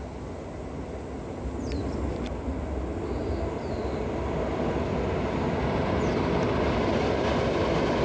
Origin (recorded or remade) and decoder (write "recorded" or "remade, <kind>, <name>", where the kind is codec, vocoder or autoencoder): recorded